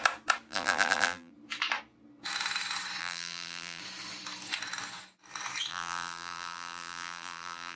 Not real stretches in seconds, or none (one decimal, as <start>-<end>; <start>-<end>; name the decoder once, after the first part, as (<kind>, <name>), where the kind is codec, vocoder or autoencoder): 0.5-1.3 (vocoder, BigVGAN v2); 3.0-3.8; 5.7-7.8